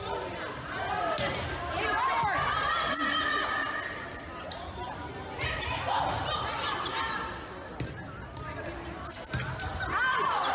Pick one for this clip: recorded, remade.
recorded